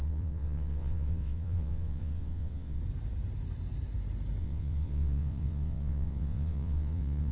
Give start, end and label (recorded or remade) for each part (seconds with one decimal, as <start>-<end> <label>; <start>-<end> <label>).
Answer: 0.0-2.8 remade; 2.8-4.4 recorded; 4.4-7.3 remade